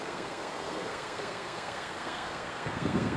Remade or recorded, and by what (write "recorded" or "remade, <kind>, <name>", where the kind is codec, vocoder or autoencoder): remade, codec, SNAC